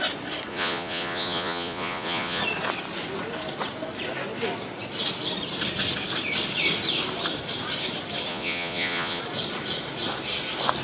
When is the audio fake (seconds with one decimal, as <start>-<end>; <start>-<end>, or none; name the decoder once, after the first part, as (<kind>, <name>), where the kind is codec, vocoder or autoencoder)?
0.5-2.4 (vocoder, Vocos); 8.3-9.2